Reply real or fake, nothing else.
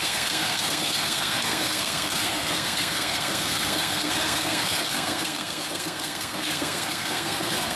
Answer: fake